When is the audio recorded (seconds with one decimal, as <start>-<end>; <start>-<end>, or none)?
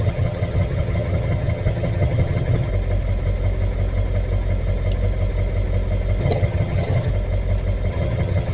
2.7-6.2; 7.1-7.9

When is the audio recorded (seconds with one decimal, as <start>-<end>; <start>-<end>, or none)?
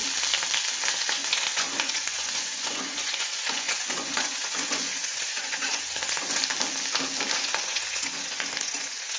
0.0-1.1; 6.4-7.3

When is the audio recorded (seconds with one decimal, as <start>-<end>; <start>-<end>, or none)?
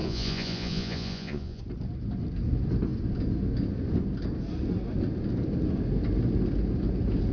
1.6-7.3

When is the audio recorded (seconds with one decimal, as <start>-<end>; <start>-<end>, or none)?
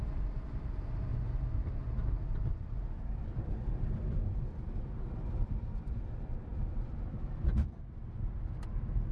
1.1-3.2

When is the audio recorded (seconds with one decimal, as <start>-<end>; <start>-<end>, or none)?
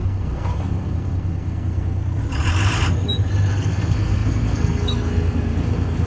2.2-3.5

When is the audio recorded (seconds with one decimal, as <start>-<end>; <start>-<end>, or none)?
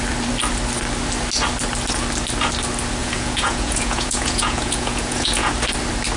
0.0-3.0; 5.5-6.2